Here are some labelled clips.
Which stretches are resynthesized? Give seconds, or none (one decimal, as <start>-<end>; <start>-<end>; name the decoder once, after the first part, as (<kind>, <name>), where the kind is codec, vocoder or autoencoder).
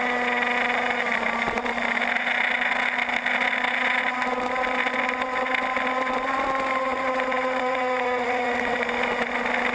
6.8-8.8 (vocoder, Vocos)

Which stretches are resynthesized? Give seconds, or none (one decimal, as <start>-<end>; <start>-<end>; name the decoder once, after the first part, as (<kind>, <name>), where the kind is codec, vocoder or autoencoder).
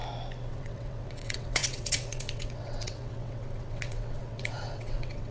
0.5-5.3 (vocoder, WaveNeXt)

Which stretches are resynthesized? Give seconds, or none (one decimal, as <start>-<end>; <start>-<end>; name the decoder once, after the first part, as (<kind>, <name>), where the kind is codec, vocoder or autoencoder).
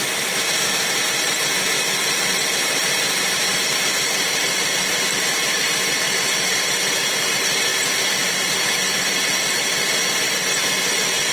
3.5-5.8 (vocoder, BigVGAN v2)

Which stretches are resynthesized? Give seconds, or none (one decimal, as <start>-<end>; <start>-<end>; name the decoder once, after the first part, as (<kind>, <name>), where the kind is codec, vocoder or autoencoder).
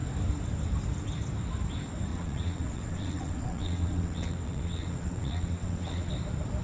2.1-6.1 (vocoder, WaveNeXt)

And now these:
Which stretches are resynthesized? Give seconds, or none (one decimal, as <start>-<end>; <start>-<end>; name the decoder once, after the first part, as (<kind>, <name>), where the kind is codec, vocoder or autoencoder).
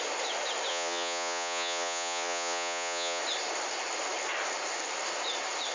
0.7-3.2 (vocoder, Vocos)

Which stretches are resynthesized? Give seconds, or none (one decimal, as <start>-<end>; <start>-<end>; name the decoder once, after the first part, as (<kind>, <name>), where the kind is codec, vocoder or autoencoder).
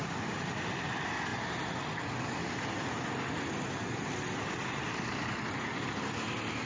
none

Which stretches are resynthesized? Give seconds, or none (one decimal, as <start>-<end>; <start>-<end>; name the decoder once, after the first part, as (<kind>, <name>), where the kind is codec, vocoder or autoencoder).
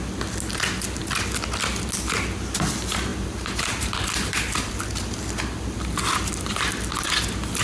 3.1-4.7 (vocoder, BigVGAN v2)